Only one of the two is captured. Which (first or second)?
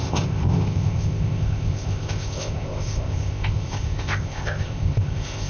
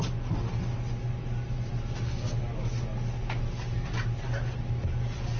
second